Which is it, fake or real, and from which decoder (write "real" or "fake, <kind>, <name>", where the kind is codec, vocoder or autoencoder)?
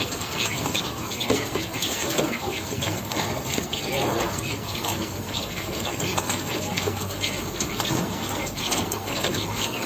fake, codec, SNAC